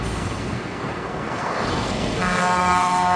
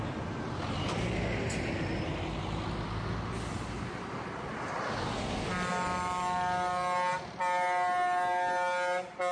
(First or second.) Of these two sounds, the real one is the second